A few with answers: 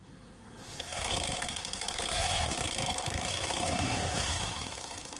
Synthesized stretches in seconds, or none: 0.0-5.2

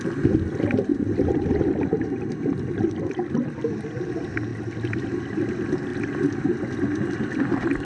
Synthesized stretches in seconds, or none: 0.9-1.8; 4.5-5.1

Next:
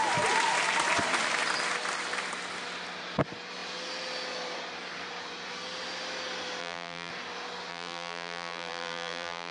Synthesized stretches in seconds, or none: 6.6-7.1; 7.7-9.5

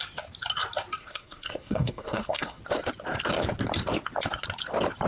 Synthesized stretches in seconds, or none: 1.0-2.6